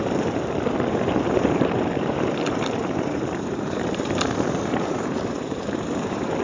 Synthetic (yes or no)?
yes